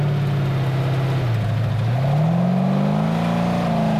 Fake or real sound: real